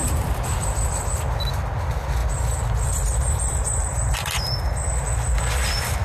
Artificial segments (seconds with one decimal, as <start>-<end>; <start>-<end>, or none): 0.0-1.2; 2.2-4.1